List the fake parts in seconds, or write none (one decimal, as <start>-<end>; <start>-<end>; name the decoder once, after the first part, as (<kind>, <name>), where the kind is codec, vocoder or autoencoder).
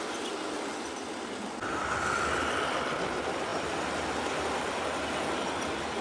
none